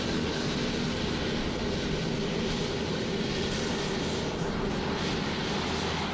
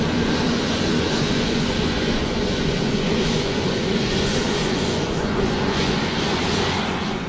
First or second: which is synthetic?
second